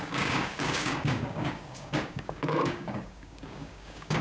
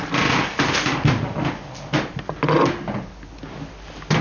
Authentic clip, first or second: second